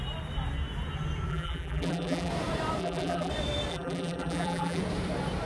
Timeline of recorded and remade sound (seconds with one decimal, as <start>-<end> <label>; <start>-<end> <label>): 0.0-1.3 recorded; 1.3-2.3 remade; 2.3-2.8 recorded; 2.8-3.3 remade; 3.3-3.7 recorded; 3.7-4.8 remade; 4.8-5.5 recorded